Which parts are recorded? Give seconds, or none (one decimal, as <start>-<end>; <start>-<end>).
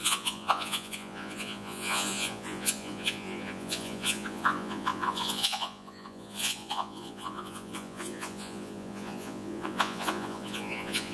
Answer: none